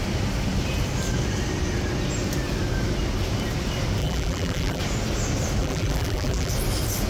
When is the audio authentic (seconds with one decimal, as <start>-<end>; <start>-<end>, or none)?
0.0-4.0; 4.8-5.6; 6.5-7.1

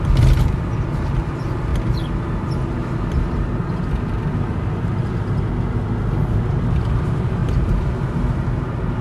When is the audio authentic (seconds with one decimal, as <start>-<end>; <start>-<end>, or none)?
1.7-6.4

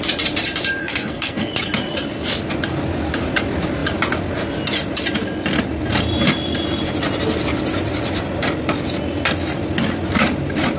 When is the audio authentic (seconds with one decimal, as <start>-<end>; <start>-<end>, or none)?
0.0-0.8; 1.5-10.8

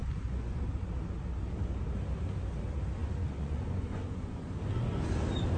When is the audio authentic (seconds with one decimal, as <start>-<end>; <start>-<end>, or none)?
0.6-3.0; 4.5-5.6

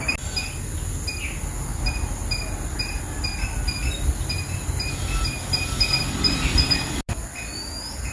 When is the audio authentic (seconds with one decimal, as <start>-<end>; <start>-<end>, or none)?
0.0-8.1